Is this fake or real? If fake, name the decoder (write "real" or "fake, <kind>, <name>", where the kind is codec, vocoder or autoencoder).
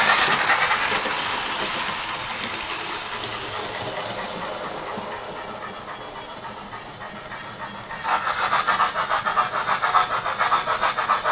real